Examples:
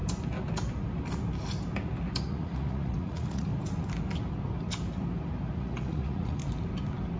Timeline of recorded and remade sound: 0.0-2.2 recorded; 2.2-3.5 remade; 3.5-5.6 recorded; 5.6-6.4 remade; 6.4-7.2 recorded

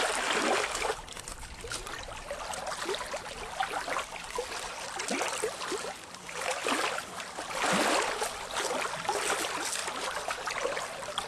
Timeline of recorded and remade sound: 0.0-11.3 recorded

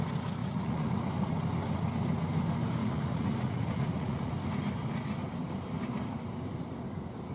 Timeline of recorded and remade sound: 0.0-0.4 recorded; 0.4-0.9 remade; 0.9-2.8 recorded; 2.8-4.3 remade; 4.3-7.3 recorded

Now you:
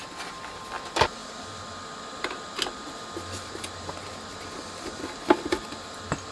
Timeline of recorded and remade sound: 0.0-6.3 recorded